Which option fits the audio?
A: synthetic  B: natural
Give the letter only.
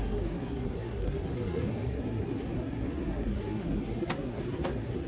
A